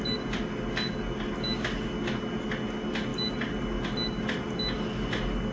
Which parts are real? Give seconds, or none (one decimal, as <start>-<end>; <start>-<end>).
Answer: 0.0-5.5